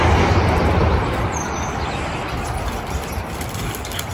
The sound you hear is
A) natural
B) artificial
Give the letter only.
A